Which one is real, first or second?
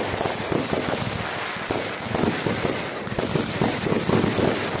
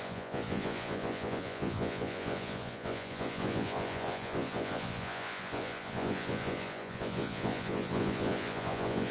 first